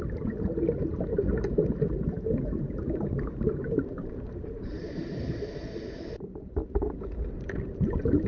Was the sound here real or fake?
fake